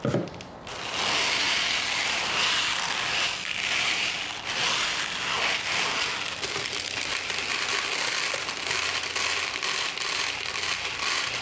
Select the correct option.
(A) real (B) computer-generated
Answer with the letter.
A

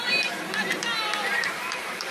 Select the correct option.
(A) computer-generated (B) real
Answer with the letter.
A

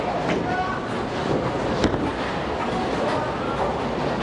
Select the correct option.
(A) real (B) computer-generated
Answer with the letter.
A